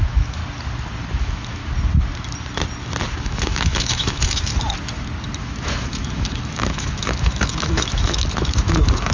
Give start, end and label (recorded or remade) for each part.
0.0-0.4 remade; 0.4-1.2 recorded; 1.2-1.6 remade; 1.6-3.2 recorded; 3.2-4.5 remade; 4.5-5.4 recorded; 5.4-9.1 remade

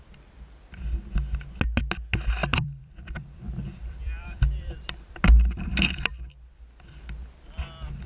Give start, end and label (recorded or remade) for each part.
0.0-2.4 recorded; 2.4-6.1 remade; 6.1-8.1 recorded

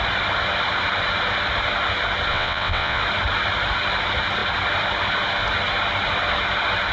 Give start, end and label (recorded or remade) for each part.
0.0-2.3 recorded; 2.3-3.0 remade; 3.0-6.9 recorded

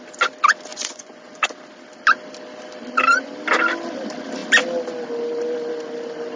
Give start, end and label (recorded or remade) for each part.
0.0-0.7 recorded; 0.7-1.4 remade; 1.4-6.4 recorded

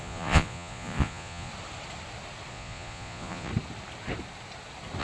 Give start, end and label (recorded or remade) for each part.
0.0-1.5 remade; 1.5-2.5 recorded; 2.5-3.5 remade; 3.5-5.0 recorded

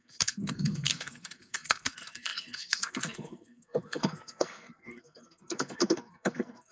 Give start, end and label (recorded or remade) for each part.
0.0-6.7 remade